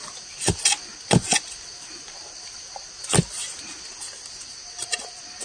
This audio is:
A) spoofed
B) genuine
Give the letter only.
B